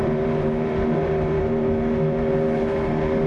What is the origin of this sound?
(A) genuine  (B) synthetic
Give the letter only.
B